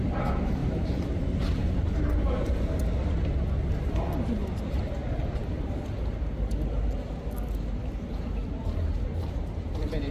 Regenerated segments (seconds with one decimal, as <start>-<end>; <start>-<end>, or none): 0.6-1.2; 7.8-9.7